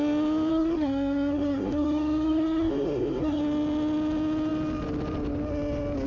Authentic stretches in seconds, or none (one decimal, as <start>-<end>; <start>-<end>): 0.0-0.5; 3.4-6.1